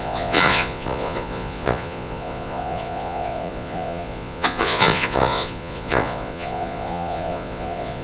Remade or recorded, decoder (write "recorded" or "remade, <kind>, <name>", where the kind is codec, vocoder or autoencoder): remade, vocoder, Vocos